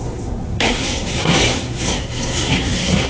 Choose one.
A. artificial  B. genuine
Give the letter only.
A